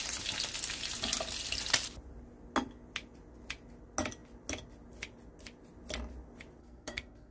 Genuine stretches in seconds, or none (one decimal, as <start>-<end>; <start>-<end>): 0.0-6.6